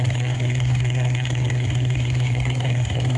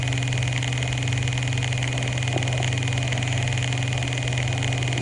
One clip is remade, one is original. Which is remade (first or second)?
first